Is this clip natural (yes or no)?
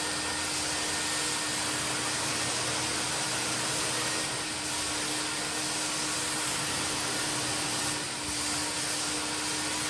yes